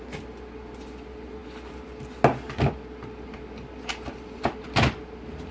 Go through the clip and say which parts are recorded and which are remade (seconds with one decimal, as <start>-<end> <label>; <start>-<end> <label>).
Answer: 0.0-5.5 recorded